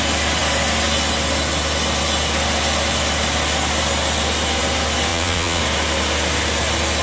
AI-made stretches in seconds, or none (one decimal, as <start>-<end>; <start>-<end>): 5.1-5.6